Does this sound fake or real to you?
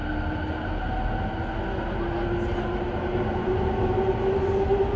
real